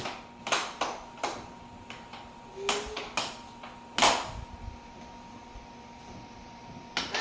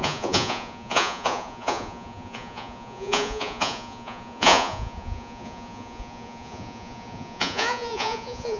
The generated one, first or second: second